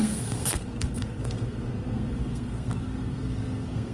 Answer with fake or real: fake